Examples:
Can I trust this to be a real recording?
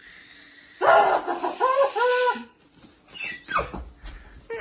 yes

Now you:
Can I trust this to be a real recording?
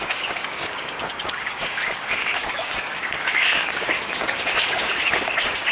no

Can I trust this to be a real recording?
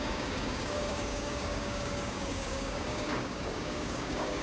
no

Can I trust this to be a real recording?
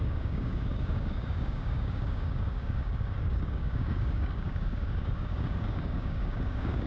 no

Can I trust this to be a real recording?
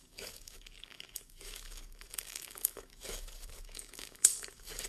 no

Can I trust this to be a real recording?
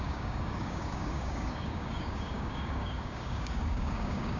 no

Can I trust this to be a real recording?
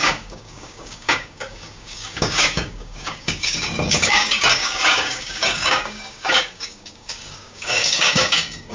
no